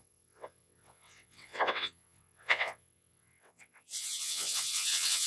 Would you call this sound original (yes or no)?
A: no